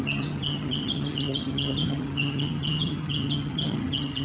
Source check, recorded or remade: remade